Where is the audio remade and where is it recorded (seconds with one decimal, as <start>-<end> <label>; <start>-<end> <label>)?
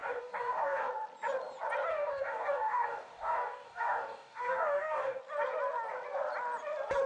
0.0-0.9 remade; 0.9-1.9 recorded; 1.9-5.2 remade; 5.2-7.1 recorded